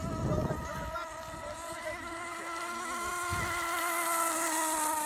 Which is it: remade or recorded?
recorded